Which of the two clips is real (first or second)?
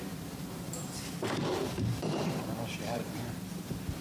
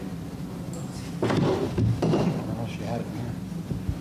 second